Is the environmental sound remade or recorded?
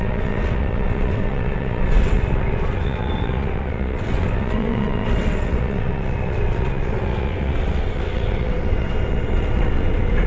remade